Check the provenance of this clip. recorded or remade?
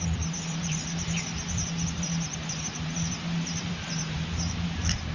remade